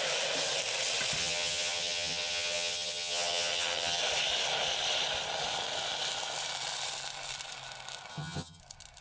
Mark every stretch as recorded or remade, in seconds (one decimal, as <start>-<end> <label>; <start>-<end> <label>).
0.0-1.2 recorded; 1.2-4.0 remade; 4.0-8.1 recorded; 8.1-8.6 remade; 8.6-9.0 recorded